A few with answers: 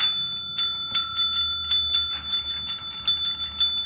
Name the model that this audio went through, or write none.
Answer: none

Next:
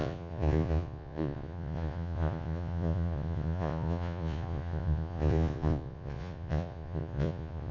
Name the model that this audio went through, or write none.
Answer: vocoder, Vocos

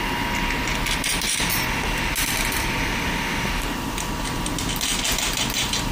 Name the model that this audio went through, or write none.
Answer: none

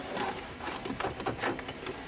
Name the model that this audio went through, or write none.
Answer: none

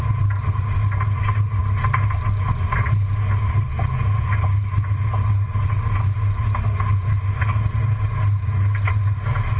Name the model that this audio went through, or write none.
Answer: none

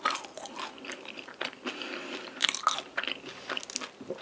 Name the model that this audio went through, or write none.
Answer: none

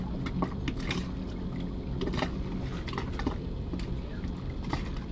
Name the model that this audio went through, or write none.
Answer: none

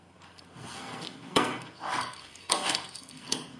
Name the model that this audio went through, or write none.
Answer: codec, SNAC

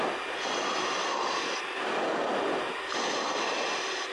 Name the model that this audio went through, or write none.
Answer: none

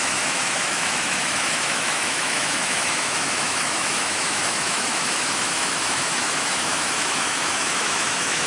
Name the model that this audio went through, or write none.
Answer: autoencoder, DAC-VAE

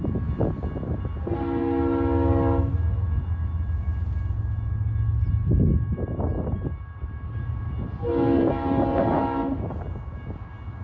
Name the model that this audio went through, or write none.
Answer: none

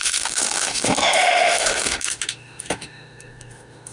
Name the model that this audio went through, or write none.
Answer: autoencoder, DAC-VAE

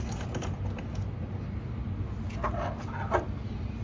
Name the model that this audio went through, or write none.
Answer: none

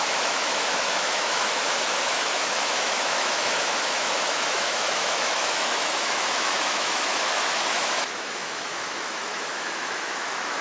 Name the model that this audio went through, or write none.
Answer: autoencoder, DAC-VAE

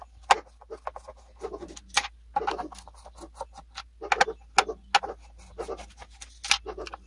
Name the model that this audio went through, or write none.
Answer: none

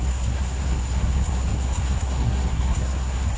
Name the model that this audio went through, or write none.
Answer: codec, SNAC